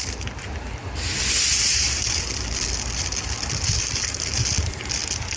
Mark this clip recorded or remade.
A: recorded